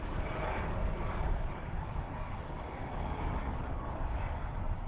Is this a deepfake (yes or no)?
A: yes